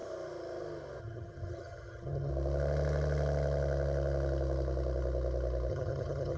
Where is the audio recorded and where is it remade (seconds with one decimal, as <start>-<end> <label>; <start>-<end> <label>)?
0.0-1.0 recorded; 1.0-2.3 remade; 2.3-5.7 recorded; 5.7-6.4 remade

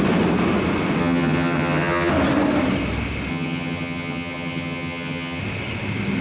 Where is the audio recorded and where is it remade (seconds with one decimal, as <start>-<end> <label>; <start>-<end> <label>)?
0.0-1.0 recorded; 1.0-2.1 remade; 2.1-3.3 recorded; 3.3-5.4 remade; 5.4-6.2 recorded

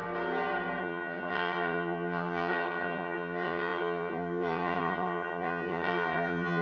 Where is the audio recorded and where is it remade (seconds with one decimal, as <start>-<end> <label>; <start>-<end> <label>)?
0.0-0.8 recorded; 0.8-6.6 remade

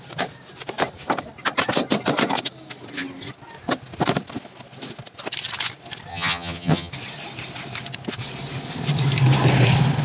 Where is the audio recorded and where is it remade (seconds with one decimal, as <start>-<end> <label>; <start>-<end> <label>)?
0.0-6.1 recorded; 6.1-6.9 remade; 6.9-10.0 recorded

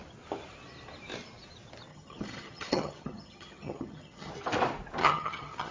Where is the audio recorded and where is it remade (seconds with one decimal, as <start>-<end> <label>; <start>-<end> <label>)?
0.0-1.9 recorded; 1.9-4.3 remade; 4.3-5.0 recorded; 5.0-5.7 remade

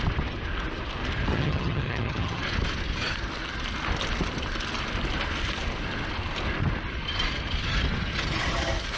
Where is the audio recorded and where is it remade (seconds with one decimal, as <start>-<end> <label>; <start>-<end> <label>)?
0.0-1.3 recorded; 1.3-2.4 remade; 2.4-9.0 recorded

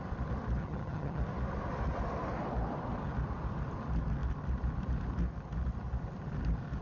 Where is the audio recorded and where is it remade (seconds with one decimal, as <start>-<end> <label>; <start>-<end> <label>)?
0.0-0.6 recorded; 0.6-1.2 remade; 1.2-6.8 recorded